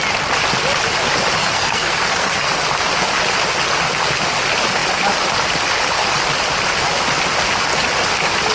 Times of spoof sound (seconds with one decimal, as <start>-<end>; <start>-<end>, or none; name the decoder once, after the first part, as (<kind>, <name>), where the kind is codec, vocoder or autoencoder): 1.4-2.5 (codec, SNAC)